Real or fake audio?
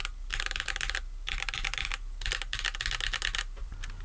real